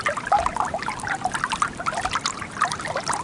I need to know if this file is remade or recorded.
recorded